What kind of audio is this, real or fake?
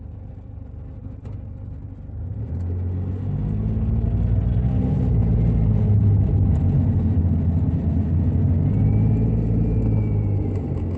real